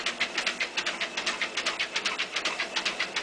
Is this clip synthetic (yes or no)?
no